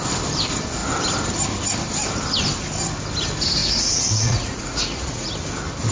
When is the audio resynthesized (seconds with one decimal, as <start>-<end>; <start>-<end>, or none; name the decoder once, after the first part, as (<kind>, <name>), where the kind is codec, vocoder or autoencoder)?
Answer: 3.6-5.3 (vocoder, Vocos)